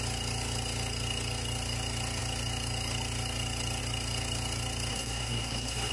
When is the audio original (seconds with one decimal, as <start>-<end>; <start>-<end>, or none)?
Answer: 0.0-4.9